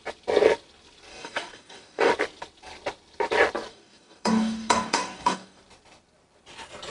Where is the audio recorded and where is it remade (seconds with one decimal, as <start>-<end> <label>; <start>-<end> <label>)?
0.0-1.1 recorded; 1.1-2.1 remade; 2.1-3.7 recorded; 3.7-5.6 remade; 5.6-6.9 recorded